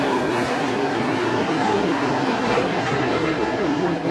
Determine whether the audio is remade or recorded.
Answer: remade